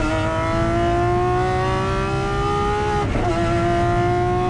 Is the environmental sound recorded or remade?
recorded